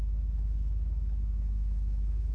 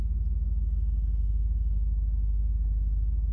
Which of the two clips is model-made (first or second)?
first